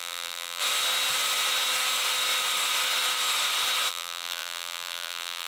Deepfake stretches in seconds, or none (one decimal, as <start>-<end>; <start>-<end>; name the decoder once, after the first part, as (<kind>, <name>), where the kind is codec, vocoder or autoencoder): 0.0-0.6 (vocoder, BigVGAN v2); 3.9-5.5